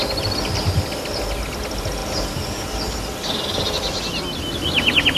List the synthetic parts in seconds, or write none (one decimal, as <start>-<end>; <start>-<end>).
2.0-4.0